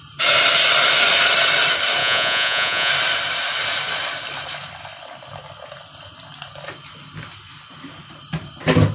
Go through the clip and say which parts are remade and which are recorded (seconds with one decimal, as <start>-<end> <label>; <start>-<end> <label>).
0.0-2.0 recorded; 2.0-2.9 remade; 2.9-8.9 recorded